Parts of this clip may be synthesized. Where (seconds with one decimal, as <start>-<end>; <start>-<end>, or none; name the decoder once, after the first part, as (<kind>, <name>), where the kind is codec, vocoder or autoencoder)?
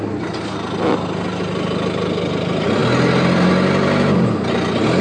none